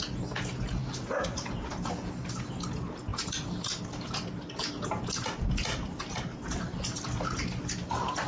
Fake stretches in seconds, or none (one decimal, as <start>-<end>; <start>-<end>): none